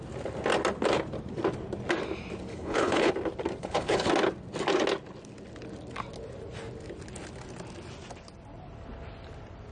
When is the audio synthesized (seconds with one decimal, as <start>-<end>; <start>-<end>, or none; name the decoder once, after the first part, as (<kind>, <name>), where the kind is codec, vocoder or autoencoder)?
2.5-3.1 (codec, HILCodec); 3.6-4.1